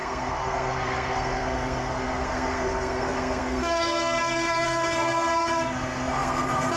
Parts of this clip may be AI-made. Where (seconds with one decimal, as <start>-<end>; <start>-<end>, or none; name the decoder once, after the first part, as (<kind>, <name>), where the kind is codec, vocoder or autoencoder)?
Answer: 0.0-6.8 (codec, SNAC)